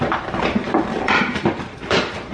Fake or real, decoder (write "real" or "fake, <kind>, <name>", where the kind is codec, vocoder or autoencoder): fake, vocoder, BigVGAN v2